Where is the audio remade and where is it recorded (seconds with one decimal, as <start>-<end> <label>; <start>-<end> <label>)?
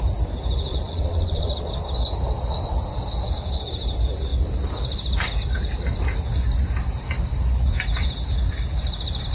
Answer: 0.0-0.7 recorded; 0.7-1.7 remade; 1.7-9.3 recorded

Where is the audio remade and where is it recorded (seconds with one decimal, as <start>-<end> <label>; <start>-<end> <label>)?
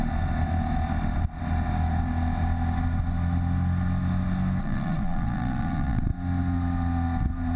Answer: 0.0-4.6 recorded; 4.6-6.1 remade; 6.1-7.6 recorded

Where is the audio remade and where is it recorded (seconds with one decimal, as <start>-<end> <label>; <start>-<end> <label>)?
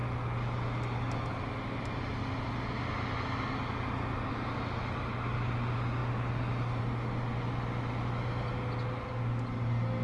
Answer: 0.0-10.0 recorded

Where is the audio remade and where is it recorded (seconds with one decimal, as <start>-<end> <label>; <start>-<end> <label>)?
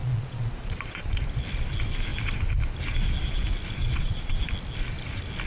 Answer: 0.0-1.2 remade; 1.2-3.8 recorded; 3.8-4.3 remade; 4.3-5.5 recorded